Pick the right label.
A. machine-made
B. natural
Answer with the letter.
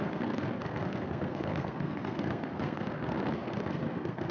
A